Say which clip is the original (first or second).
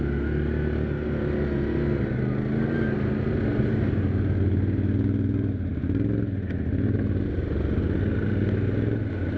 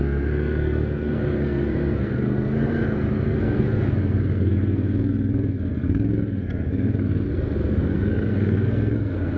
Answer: first